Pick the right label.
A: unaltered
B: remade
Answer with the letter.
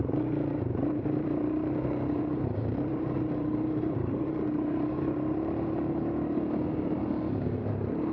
B